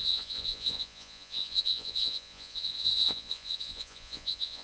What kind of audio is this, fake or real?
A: fake